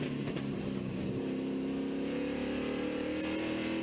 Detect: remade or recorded recorded